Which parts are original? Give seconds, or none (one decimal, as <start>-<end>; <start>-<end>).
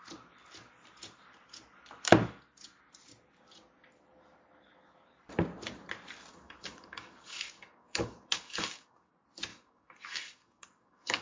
0.0-6.3; 9.1-9.5